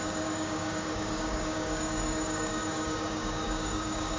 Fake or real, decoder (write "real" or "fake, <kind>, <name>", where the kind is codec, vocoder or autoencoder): fake, codec, DAC